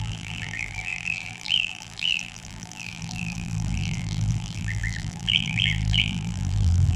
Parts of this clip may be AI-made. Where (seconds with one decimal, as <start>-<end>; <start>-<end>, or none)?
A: 0.0-7.0